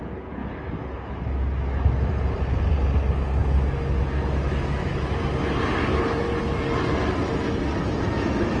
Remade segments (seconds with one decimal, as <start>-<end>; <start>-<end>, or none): none